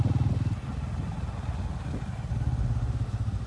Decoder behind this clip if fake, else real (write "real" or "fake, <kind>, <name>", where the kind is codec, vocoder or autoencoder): real